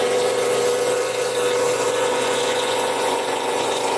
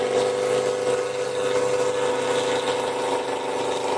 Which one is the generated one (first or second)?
first